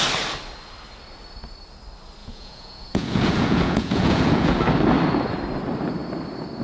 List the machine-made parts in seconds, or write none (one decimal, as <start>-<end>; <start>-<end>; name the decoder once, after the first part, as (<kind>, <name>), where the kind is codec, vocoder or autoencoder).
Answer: 2.2-4.6 (vocoder, Vocos)